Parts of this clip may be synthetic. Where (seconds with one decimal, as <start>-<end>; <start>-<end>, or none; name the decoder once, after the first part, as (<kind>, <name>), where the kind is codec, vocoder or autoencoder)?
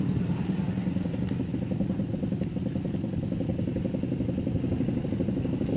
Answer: none